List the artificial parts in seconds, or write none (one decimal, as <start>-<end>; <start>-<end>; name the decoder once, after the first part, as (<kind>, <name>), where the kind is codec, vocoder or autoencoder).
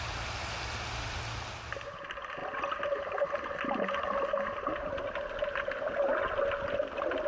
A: none